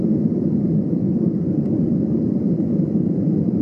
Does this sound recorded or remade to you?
remade